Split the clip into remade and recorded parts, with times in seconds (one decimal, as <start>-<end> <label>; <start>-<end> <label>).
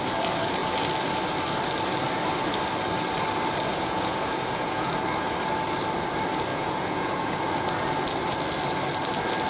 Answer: 0.0-3.7 recorded; 3.7-4.9 remade; 4.9-6.5 recorded; 6.5-7.4 remade; 7.4-9.5 recorded